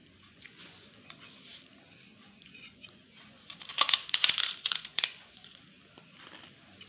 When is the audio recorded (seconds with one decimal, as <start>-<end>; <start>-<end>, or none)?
1.4-2.2; 5.6-6.9